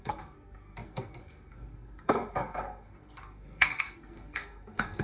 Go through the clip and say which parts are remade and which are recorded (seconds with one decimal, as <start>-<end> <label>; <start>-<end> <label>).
0.0-5.0 remade